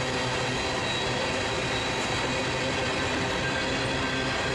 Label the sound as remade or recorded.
recorded